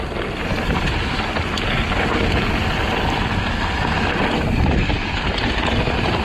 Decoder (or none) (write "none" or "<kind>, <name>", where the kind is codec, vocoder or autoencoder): none